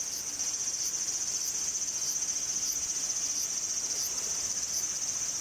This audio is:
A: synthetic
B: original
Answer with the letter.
B